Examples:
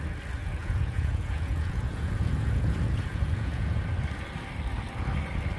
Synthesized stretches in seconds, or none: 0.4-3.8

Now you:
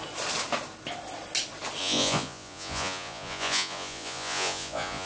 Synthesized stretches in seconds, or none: 1.8-5.1

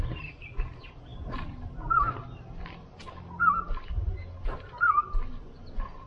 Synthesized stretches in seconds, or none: none

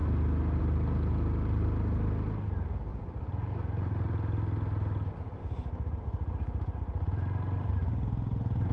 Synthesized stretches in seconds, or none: none

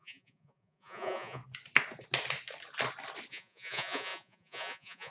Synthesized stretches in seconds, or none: 0.0-1.4; 3.3-5.1

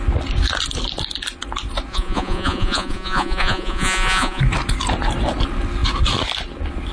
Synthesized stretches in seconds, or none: 1.9-4.4

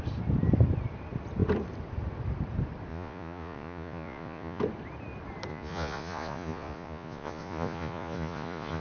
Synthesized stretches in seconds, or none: 2.9-4.6; 5.5-8.8

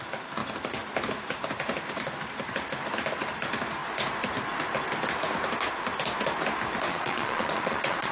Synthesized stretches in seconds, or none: 6.9-8.1